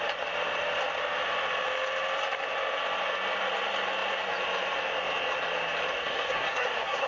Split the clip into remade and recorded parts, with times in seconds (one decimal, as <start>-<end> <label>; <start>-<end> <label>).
0.0-6.0 recorded; 6.0-7.1 remade